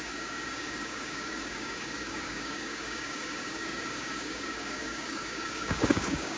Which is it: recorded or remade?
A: remade